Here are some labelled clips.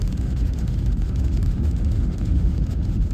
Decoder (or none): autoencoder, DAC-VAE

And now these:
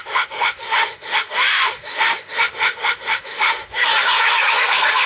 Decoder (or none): autoencoder, DAC-VAE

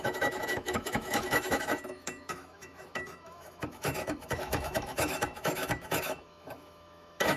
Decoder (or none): autoencoder, DAC-VAE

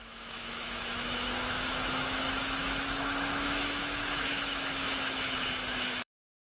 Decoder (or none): autoencoder, DAC-VAE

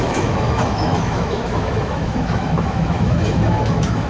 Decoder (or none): autoencoder, DAC-VAE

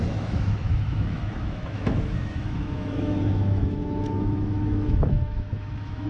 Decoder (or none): autoencoder, DAC-VAE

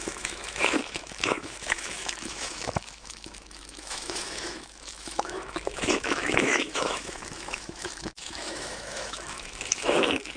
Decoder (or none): autoencoder, DAC-VAE